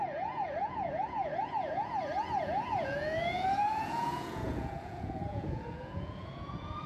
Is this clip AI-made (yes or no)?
yes